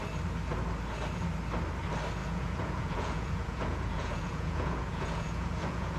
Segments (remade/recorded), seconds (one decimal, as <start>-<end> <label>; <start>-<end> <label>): 0.0-2.2 recorded; 2.2-6.0 remade

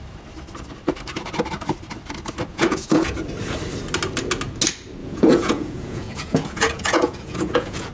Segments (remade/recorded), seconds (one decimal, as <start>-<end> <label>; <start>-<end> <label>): 0.0-2.5 recorded; 2.5-3.1 remade; 3.1-5.0 recorded; 5.0-7.9 remade

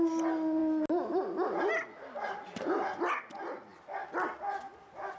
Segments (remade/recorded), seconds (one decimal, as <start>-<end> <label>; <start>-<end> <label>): 0.0-5.2 recorded

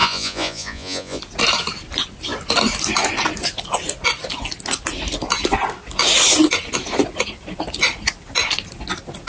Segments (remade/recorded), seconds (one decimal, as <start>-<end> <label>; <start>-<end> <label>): 0.0-1.2 remade; 1.2-9.3 recorded

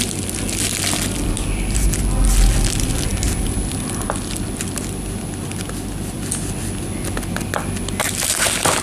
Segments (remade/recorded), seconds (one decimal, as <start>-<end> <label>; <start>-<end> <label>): 0.0-8.8 recorded

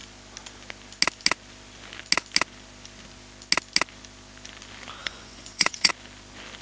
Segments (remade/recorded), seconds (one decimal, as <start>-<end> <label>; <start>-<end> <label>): 0.0-5.0 recorded; 5.0-5.9 remade; 5.9-6.6 recorded

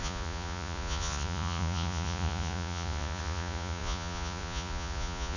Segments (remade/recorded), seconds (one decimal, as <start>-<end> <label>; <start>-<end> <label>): 0.0-5.4 remade

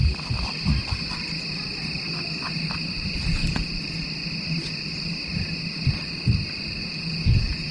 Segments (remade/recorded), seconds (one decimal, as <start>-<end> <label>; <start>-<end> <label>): 0.0-6.8 recorded; 6.8-7.7 remade